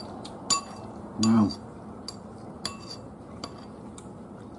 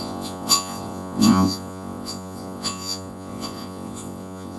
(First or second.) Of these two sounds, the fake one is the second